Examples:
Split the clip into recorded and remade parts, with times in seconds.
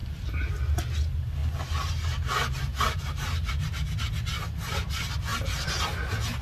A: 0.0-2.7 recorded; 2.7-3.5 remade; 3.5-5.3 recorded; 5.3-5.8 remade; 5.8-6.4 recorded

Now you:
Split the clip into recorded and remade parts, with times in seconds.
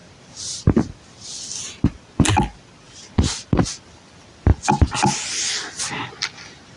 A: 0.0-4.1 remade; 4.1-4.5 recorded; 4.5-6.1 remade; 6.1-6.8 recorded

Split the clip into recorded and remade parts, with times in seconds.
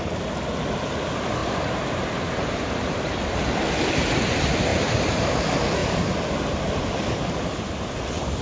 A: 0.0-1.4 recorded; 1.4-3.7 remade; 3.7-4.7 recorded; 4.7-5.3 remade; 5.3-5.8 recorded; 5.8-6.4 remade; 6.4-8.4 recorded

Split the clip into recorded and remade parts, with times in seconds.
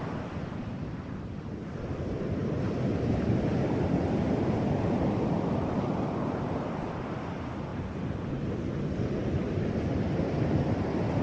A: 0.0-11.2 remade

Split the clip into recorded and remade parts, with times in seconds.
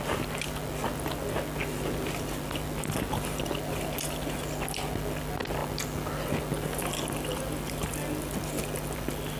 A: 0.0-9.4 recorded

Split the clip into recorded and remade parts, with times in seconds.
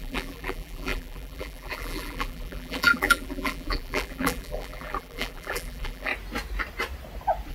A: 0.0-6.1 remade; 6.1-7.5 recorded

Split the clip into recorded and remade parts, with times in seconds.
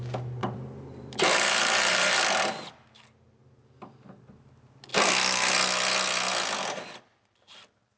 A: 0.0-0.4 recorded; 0.4-2.2 remade; 2.2-8.0 recorded